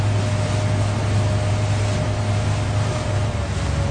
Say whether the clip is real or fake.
real